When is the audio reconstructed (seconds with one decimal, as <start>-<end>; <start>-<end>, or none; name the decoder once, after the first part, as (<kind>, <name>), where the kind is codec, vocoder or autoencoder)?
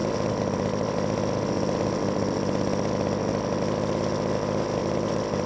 4.8-5.5 (vocoder, BigVGAN v2)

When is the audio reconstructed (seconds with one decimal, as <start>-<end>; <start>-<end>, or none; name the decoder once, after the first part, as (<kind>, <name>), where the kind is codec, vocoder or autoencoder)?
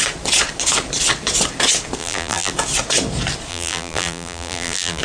2.0-2.5 (vocoder, BigVGAN v2); 3.5-5.0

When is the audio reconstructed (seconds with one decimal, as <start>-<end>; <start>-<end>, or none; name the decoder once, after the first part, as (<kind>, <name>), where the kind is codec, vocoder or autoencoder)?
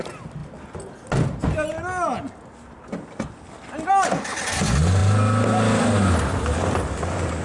none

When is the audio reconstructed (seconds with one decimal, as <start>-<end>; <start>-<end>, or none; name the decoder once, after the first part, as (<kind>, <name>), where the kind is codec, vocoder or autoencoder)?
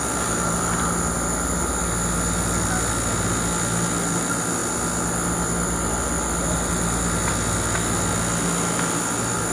none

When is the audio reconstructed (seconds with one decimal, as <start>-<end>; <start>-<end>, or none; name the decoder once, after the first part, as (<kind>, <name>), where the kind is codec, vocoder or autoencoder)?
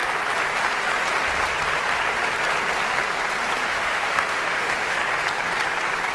3.7-5.0 (autoencoder, DAC-VAE)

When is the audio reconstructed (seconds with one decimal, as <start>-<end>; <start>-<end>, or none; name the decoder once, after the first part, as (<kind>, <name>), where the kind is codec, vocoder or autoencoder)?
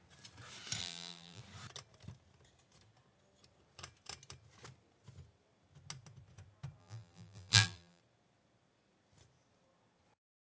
0.8-1.4 (vocoder, BigVGAN v2); 6.8-8.0